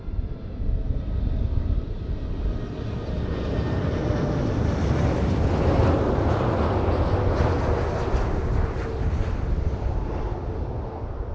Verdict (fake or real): real